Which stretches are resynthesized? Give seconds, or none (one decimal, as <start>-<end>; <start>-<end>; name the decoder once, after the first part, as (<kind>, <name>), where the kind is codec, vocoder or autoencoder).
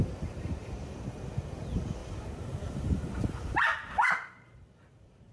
0.0-0.6 (vocoder, BigVGAN v2); 2.0-5.3